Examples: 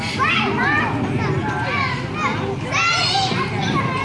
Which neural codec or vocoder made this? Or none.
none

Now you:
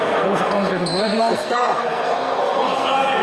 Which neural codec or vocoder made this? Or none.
codec, SNAC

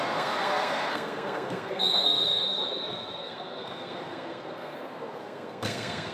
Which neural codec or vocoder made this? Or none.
codec, SNAC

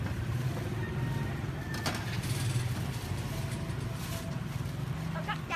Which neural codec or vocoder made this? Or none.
none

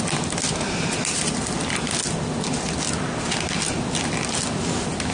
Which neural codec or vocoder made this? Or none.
none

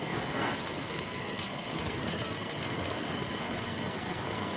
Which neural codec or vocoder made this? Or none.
codec, SNAC